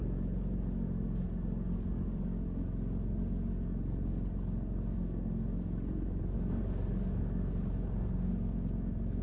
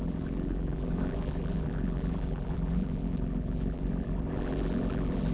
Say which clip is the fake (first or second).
second